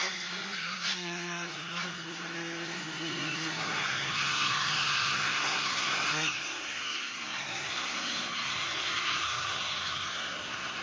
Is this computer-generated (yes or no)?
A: yes